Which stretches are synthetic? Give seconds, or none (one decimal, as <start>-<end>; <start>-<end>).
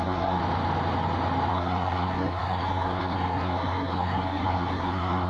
0.0-0.4; 1.5-5.3